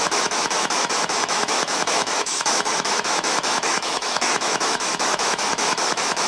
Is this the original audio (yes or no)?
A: no